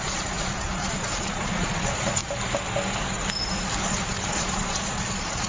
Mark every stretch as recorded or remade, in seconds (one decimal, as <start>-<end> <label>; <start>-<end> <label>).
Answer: 0.0-2.2 remade; 2.2-3.8 recorded; 3.8-5.5 remade